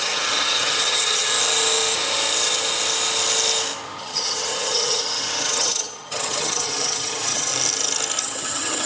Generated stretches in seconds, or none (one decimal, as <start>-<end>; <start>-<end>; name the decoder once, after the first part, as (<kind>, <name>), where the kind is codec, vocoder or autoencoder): 0.0-1.3 (vocoder, HiFi-GAN); 4.0-7.5; 8.2-8.9